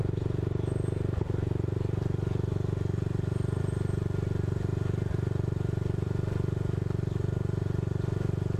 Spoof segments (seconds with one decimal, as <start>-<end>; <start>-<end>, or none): none